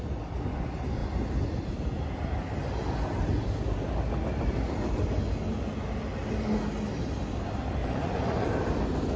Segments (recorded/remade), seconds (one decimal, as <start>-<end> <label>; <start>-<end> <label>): 0.0-7.8 recorded; 7.8-8.5 remade; 8.5-9.2 recorded